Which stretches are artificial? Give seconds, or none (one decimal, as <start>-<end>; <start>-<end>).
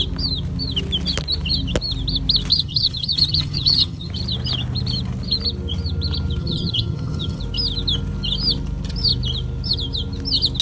2.5-4.1; 6.4-7.4